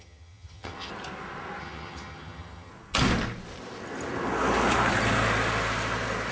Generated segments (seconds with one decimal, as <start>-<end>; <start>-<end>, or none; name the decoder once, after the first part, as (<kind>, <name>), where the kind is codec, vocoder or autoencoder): 0.0-0.9 (vocoder, HiFi-GAN); 1.6-2.7